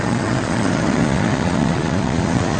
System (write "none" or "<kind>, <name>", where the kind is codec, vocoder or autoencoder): vocoder, Vocos